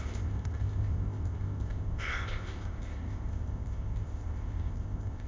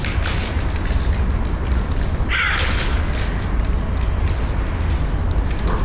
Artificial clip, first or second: first